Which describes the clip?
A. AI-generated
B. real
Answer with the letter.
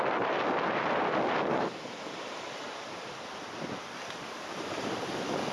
A